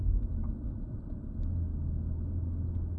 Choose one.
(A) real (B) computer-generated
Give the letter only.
A